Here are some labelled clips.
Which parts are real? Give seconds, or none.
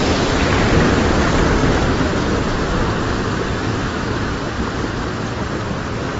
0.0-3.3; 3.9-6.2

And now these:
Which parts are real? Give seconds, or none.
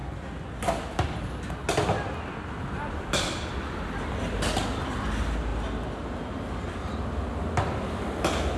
0.0-8.6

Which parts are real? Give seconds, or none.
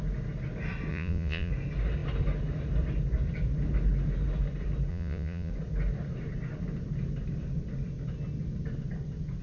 0.0-0.9; 1.5-4.9; 5.5-9.4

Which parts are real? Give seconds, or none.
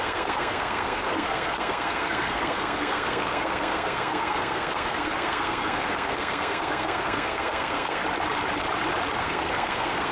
8.0-9.2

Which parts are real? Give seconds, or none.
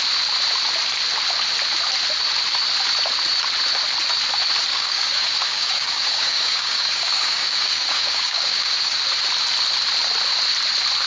0.0-4.7; 9.0-11.1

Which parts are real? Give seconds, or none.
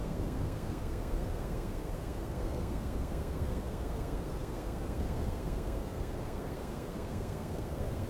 none